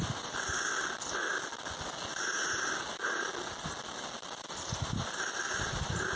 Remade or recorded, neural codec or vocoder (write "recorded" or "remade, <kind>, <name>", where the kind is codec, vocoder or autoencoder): recorded